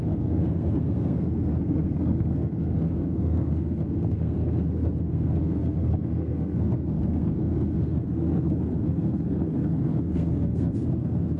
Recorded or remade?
remade